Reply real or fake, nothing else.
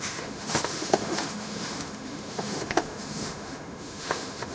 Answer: fake